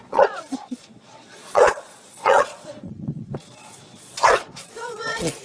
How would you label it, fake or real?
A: fake